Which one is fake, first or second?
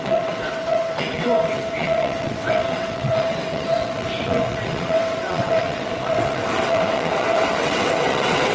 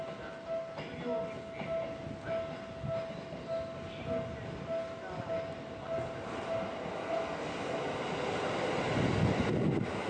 first